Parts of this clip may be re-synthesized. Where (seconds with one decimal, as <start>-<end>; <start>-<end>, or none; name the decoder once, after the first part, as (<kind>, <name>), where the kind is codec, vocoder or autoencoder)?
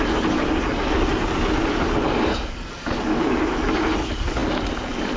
none